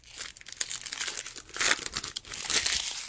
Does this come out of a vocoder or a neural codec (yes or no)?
no